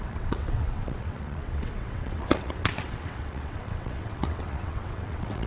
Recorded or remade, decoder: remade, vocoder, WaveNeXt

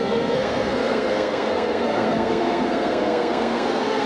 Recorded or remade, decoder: remade, codec, SNAC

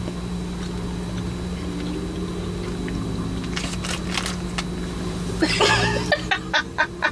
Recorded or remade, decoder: recorded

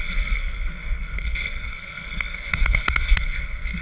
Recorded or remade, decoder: remade, codec, SNAC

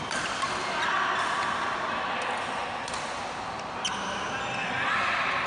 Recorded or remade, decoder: recorded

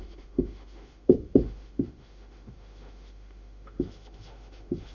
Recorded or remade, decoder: remade, autoencoder, DAC-VAE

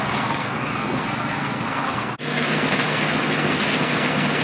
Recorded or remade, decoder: remade, codec, SNAC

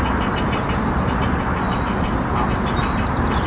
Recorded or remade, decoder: recorded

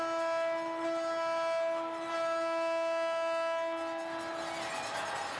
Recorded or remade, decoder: recorded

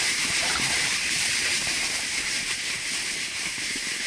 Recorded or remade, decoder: remade, vocoder, BigVGAN v2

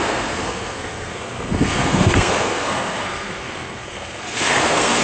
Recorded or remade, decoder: remade, codec, SNAC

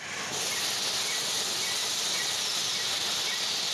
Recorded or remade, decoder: recorded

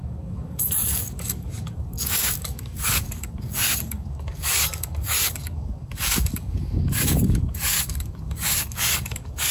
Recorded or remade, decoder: remade, codec, DAC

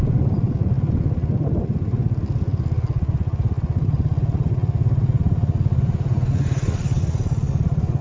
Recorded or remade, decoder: recorded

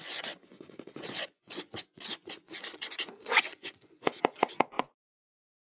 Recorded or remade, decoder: remade, vocoder, Vocos